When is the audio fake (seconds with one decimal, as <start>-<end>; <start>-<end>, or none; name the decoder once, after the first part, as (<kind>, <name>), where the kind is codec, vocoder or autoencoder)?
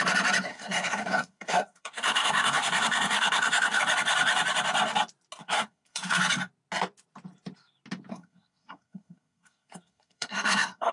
0.5-3.8 (codec, SNAC); 5.4-6.2; 8.1-10.9